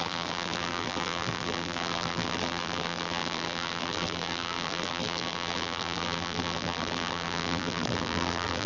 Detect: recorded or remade remade